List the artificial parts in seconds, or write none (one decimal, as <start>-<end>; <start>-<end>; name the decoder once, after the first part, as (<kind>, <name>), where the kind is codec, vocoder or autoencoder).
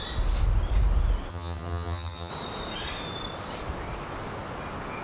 1.3-2.3 (vocoder, HiFi-GAN)